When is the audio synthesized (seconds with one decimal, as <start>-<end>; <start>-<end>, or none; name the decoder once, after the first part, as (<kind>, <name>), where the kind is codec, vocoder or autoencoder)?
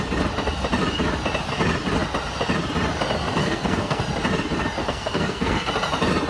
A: 3.4-4.0 (codec, SNAC); 4.8-5.7